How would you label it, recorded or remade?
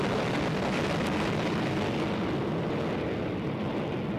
recorded